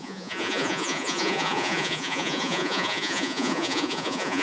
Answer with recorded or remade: remade